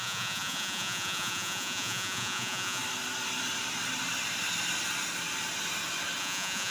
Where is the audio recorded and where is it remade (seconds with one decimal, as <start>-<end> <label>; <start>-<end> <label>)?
0.0-2.8 remade; 2.8-6.2 recorded; 6.2-6.7 remade